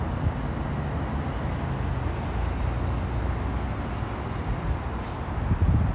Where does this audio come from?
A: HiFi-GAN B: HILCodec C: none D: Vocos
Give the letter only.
C